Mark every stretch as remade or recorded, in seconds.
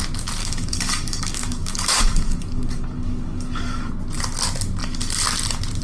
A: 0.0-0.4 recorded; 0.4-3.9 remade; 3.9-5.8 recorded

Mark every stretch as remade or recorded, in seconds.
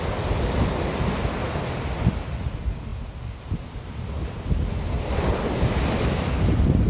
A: 0.0-6.9 recorded